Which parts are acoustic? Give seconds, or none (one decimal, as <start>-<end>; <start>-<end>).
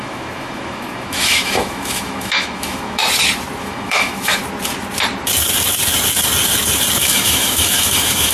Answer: 3.0-3.6; 4.4-7.0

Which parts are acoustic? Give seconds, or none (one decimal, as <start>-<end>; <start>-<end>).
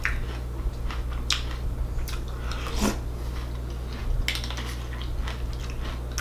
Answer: 0.0-6.2